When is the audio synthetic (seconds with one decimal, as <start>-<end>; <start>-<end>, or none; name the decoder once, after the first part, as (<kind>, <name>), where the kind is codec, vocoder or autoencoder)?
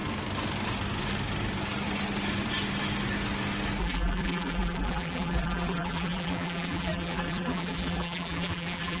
3.8-9.0 (vocoder, BigVGAN v2)